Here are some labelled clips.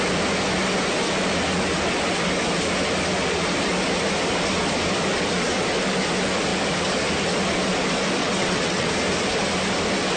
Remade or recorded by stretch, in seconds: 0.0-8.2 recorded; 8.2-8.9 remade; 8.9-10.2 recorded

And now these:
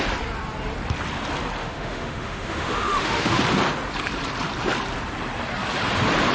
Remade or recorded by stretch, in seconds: 0.0-1.6 recorded; 1.6-3.4 remade; 3.4-6.3 recorded

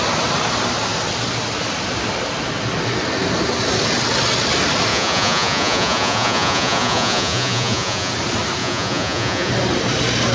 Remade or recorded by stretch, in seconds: 0.0-4.9 recorded; 4.9-8.1 remade; 8.1-8.6 recorded; 8.6-9.5 remade; 9.5-10.3 recorded

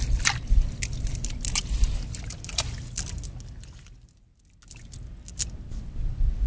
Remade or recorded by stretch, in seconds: 0.0-6.5 recorded

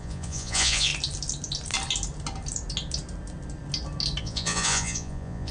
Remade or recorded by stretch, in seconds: 0.0-0.9 remade; 0.9-4.2 recorded; 4.2-5.5 remade

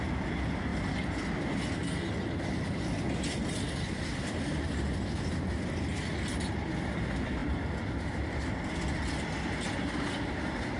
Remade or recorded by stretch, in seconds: 0.0-7.4 recorded; 7.4-9.1 remade; 9.1-10.8 recorded